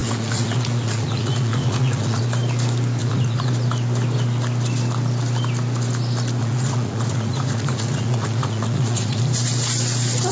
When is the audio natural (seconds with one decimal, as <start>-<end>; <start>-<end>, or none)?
2.2-3.0; 3.5-6.4; 9.2-10.3